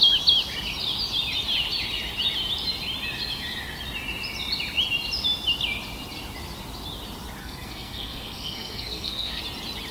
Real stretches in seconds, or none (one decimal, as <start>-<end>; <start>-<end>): 0.0-7.4; 9.4-9.9